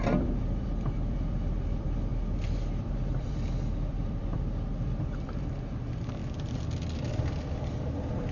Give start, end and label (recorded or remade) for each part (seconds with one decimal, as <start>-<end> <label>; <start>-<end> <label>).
0.0-6.2 remade; 6.2-7.1 recorded; 7.1-8.3 remade